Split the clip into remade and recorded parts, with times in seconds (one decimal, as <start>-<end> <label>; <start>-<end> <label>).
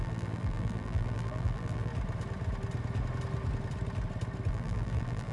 0.0-1.9 remade; 1.9-4.5 recorded; 4.5-5.3 remade